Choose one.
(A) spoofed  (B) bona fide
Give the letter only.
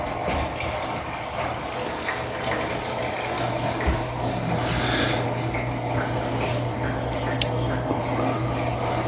B